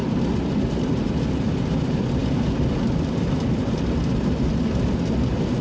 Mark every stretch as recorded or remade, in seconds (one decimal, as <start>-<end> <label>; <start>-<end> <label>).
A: 0.0-5.6 recorded